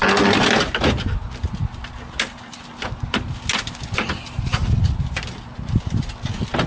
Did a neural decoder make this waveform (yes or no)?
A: no